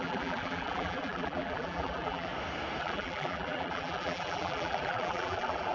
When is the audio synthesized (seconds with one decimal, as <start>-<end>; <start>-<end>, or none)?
0.0-2.3; 2.8-5.7

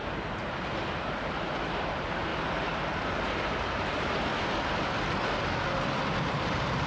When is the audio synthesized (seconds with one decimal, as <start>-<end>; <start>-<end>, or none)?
0.0-2.3; 3.2-4.3; 6.2-6.9

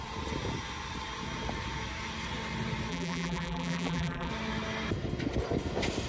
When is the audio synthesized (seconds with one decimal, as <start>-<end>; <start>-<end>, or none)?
2.9-4.3